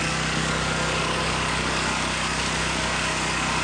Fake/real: fake